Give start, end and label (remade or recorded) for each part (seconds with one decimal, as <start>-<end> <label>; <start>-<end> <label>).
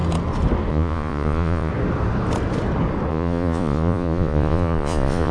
0.0-0.7 recorded; 0.7-1.7 remade; 1.7-3.1 recorded; 3.1-5.3 remade